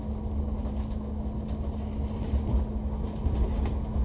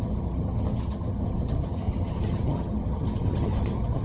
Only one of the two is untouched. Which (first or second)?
first